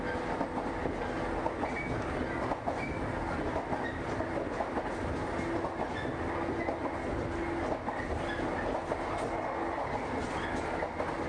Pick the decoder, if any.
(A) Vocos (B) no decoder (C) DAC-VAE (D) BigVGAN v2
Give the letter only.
B